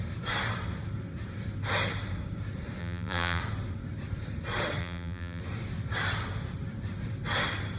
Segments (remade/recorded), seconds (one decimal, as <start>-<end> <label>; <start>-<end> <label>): 0.0-2.8 recorded; 2.8-3.4 remade; 3.4-4.8 recorded; 4.8-5.4 remade; 5.4-7.8 recorded